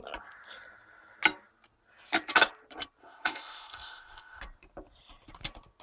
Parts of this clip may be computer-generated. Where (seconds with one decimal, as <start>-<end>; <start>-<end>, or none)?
3.0-4.4